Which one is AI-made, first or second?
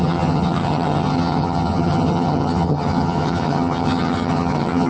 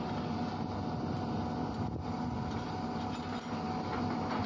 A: first